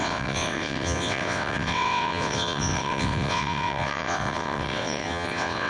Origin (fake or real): fake